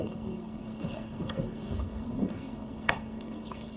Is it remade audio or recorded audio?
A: remade